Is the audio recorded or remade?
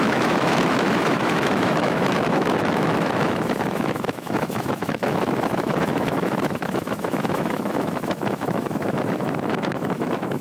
remade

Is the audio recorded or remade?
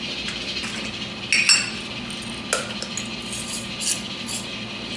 recorded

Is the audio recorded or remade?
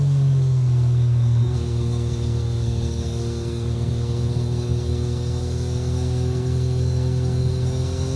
remade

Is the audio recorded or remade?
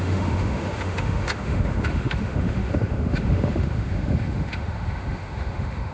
remade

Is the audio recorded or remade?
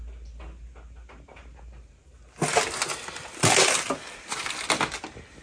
recorded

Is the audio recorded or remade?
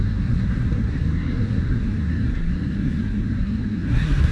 remade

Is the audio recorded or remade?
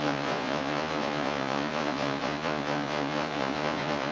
remade